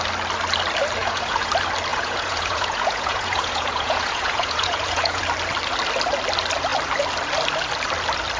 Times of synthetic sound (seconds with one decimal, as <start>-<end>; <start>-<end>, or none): 1.0-1.5; 1.9-5.2